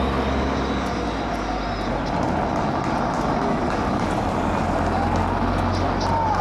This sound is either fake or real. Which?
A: real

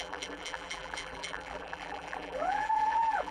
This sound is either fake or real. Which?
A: fake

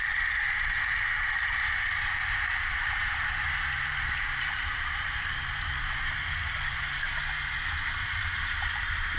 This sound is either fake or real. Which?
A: fake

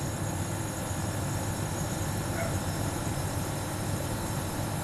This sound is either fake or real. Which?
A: fake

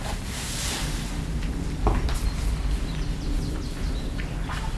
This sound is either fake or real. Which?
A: real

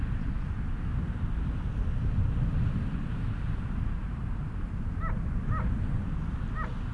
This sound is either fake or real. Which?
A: real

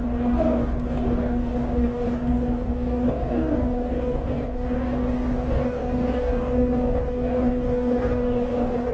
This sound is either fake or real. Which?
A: fake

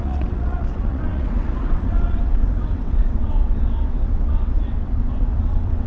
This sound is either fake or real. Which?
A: fake